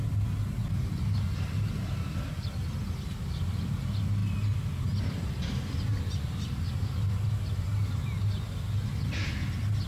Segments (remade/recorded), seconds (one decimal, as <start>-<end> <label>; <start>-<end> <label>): 0.0-9.9 recorded